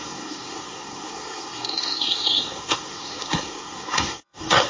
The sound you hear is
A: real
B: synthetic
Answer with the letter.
B